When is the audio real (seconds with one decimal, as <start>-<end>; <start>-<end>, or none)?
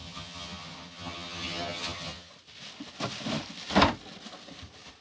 2.3-5.0